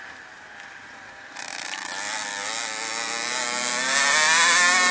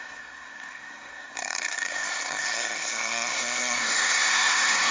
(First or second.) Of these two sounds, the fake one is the second